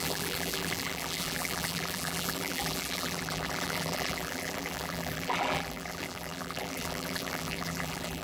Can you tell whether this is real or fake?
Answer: fake